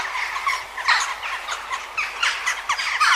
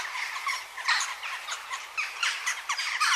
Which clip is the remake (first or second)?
second